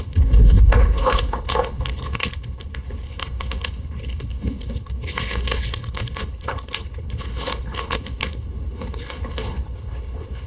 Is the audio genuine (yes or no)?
no